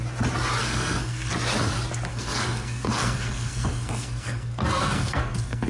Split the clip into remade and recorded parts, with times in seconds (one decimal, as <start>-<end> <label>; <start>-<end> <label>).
0.0-0.6 recorded; 0.6-1.3 remade; 1.3-2.1 recorded; 2.1-5.7 remade